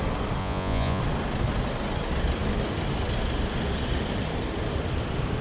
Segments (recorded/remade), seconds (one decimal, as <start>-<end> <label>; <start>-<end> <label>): 0.0-0.4 recorded; 0.4-1.0 remade; 1.0-5.4 recorded